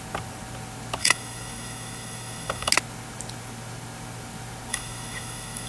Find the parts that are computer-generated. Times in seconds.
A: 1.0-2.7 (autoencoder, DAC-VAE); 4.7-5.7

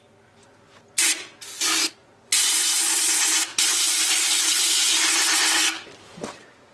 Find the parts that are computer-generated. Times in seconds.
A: 2.0-2.6 (vocoder, Vocos)

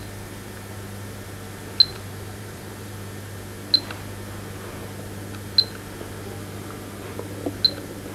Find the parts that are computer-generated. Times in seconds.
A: 1.9-2.9 (vocoder, BigVGAN v2)